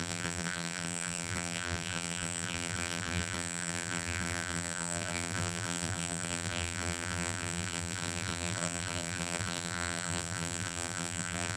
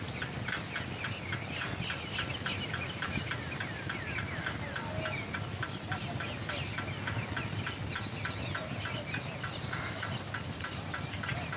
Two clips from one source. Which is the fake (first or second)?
first